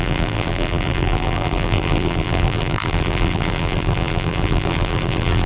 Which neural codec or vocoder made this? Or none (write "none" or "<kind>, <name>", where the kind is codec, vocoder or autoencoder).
vocoder, BigVGAN v2